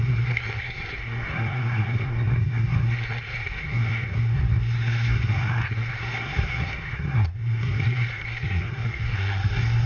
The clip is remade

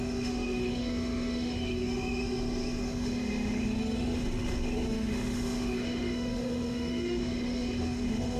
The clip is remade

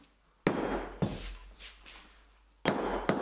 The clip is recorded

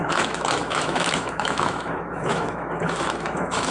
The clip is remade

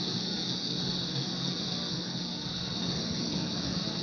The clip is remade